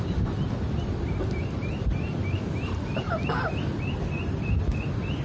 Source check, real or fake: real